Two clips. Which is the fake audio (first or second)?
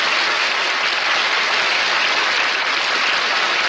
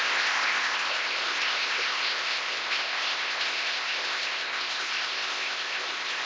second